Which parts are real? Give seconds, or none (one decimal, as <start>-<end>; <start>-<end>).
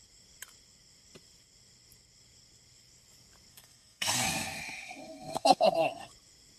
0.0-3.5; 6.1-6.6